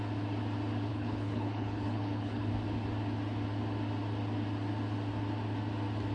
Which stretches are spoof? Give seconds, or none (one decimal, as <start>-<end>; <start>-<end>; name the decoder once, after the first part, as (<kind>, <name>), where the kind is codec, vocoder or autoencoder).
0.9-2.5 (codec, HILCodec)